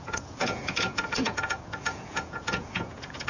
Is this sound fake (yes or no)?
yes